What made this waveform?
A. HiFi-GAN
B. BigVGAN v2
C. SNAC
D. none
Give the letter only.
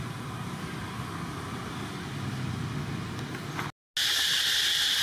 D